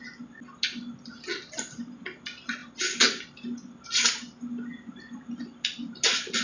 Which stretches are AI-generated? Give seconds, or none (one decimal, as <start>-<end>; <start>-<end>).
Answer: none